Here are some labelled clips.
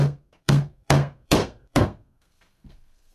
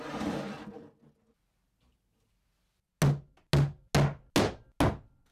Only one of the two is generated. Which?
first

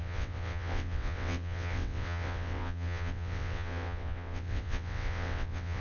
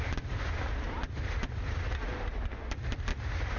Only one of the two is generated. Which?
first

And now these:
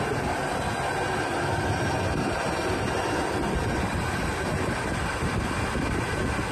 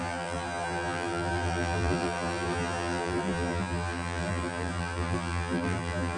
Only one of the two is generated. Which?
second